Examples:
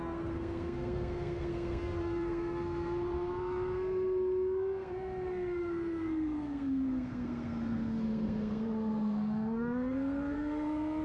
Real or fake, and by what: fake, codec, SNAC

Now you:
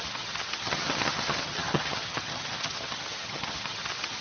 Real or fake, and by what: fake, vocoder, HiFi-GAN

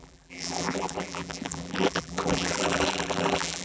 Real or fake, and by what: fake, vocoder, BigVGAN v2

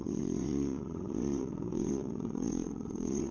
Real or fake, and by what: fake, vocoder, WaveNeXt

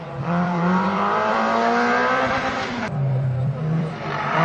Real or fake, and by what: fake, vocoder, BigVGAN v2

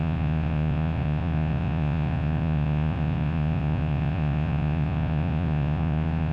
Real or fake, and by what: fake, vocoder, Vocos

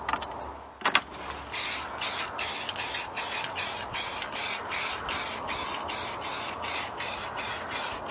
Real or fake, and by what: real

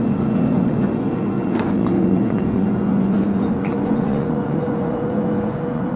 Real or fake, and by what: fake, vocoder, Vocos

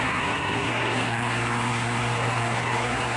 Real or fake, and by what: fake, codec, SNAC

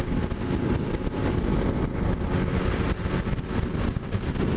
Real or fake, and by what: real